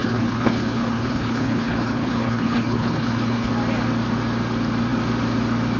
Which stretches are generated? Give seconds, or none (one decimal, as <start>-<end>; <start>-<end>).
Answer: 0.0-3.5